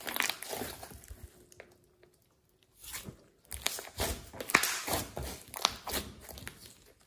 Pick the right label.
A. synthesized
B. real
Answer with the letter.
B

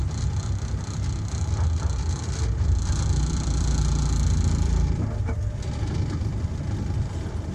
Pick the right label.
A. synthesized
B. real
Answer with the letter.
A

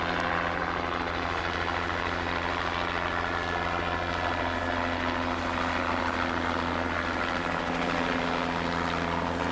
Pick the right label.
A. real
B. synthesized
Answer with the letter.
A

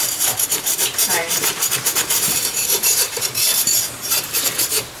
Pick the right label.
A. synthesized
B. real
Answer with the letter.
A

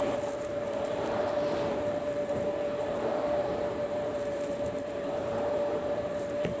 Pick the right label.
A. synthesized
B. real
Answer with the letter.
A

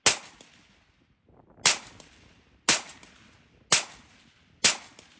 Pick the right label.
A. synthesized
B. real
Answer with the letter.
B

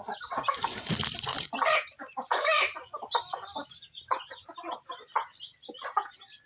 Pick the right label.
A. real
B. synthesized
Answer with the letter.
B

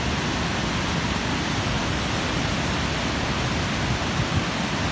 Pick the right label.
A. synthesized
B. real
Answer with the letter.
B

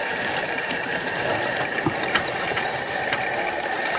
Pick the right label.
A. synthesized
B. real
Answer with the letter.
A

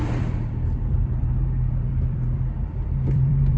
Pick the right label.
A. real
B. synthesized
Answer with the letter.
B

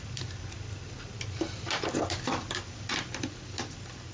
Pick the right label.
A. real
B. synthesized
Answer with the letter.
B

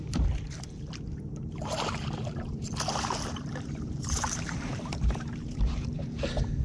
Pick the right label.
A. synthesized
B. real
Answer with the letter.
A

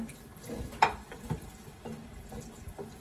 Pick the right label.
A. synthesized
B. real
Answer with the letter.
B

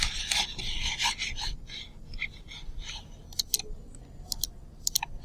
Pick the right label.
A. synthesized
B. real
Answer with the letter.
B